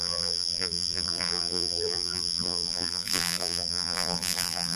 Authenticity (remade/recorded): remade